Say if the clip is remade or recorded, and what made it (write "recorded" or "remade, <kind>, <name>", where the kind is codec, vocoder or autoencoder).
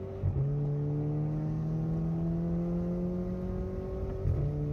recorded